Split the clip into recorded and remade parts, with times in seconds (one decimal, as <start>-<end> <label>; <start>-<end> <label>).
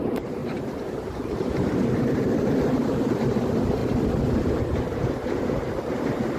0.0-3.8 remade; 3.8-4.4 recorded; 4.4-6.4 remade